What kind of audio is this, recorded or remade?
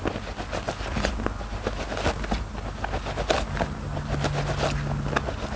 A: recorded